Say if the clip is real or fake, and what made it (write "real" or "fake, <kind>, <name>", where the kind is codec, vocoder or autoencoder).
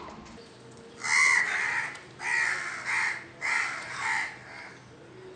real